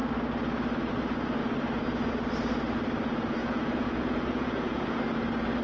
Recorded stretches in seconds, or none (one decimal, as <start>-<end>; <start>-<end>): 0.0-3.4; 5.0-5.6